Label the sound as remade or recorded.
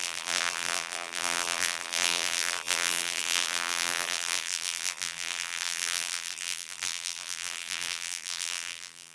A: remade